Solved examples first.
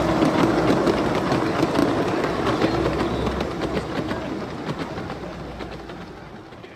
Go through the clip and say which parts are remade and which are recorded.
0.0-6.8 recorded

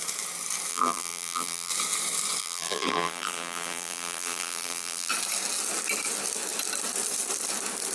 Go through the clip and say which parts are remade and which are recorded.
0.0-0.7 recorded; 0.7-1.7 remade; 1.7-2.4 recorded; 2.4-5.1 remade; 5.1-7.9 recorded

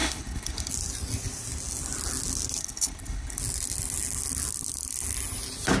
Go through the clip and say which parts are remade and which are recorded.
0.0-0.7 remade; 0.7-2.6 recorded; 2.6-3.4 remade; 3.4-5.8 recorded

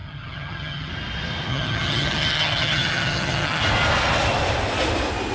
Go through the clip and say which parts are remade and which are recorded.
0.0-0.9 remade; 0.9-1.5 recorded; 1.5-3.6 remade; 3.6-5.3 recorded